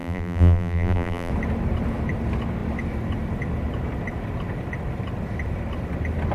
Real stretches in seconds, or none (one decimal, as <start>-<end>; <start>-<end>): 1.3-6.3